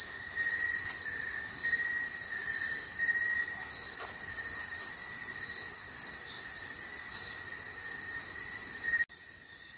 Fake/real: real